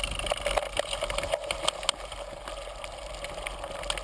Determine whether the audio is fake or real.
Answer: real